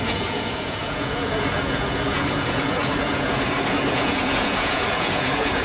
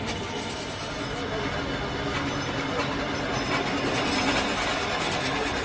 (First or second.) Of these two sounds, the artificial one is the first